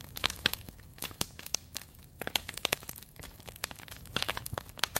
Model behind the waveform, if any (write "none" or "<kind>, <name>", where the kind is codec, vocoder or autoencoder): codec, DAC